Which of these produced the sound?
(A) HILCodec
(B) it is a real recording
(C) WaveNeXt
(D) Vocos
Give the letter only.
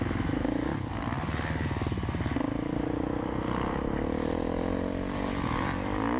B